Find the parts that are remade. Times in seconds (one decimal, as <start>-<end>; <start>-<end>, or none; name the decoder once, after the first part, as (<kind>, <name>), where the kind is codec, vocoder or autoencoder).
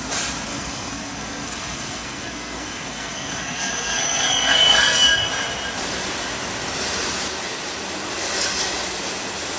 0.5-5.3 (codec, SNAC)